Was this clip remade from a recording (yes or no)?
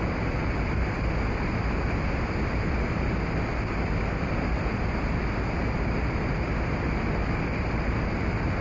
no